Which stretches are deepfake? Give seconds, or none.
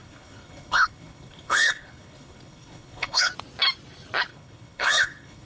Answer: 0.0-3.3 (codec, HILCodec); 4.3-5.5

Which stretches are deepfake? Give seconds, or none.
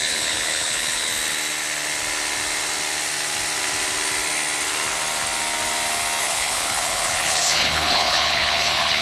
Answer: 0.0-1.1 (codec, HILCodec); 6.2-9.0